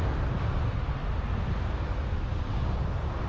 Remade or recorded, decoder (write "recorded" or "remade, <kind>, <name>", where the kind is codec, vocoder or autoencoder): recorded